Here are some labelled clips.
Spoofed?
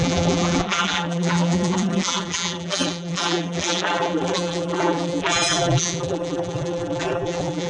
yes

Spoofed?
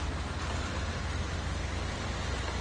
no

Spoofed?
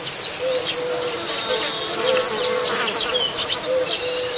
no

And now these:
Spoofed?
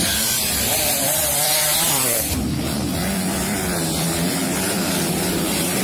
yes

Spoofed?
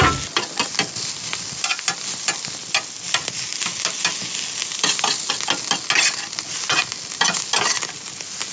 no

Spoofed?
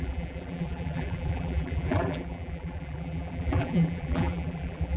yes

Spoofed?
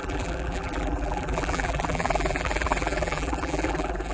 yes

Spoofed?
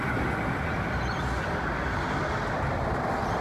no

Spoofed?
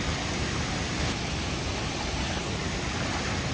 no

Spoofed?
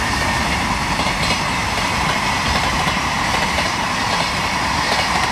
yes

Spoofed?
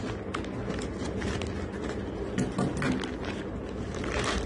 no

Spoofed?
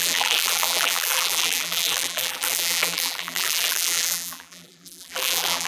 yes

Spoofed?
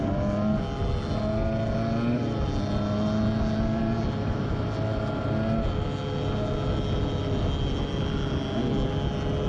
no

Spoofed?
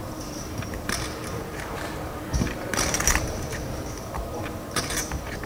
yes